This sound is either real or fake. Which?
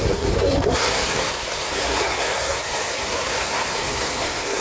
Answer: fake